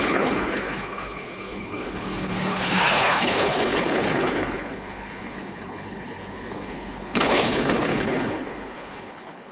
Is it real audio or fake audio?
fake